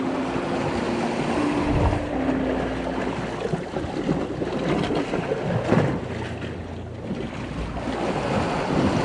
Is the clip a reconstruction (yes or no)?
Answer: no